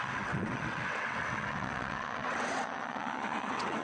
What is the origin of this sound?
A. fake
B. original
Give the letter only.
A